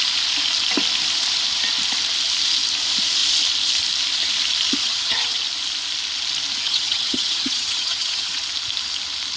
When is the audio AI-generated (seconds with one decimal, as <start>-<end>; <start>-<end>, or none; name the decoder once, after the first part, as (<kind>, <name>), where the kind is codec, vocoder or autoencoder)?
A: 4.8-5.4 (vocoder, HiFi-GAN); 6.6-8.4